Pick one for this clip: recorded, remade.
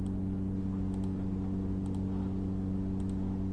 recorded